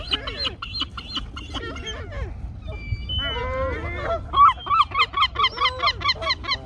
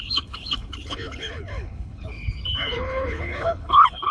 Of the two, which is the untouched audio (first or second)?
first